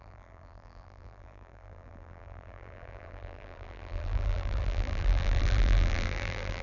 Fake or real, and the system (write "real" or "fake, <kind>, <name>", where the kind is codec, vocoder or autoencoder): fake, vocoder, BigVGAN v2